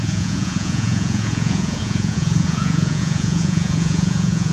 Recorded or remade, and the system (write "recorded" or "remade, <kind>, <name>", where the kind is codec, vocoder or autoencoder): remade, vocoder, Vocos